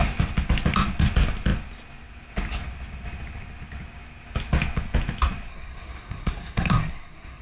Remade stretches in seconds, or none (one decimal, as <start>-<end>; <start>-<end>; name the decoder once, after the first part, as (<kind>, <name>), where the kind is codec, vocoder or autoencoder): 5.5-7.4 (codec, SNAC)